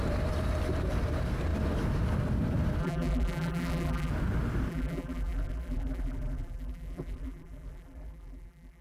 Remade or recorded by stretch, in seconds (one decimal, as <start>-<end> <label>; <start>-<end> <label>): 0.0-2.8 recorded; 2.8-4.1 remade; 4.1-4.7 recorded; 4.7-8.8 remade